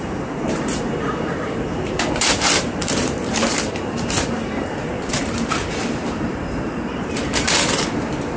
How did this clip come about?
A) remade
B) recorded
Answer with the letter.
A